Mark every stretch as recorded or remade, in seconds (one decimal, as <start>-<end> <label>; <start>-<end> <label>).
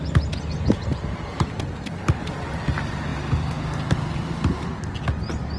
0.0-3.1 recorded; 3.1-4.1 remade; 4.1-5.6 recorded